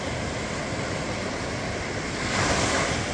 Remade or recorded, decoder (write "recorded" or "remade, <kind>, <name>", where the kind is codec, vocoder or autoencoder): recorded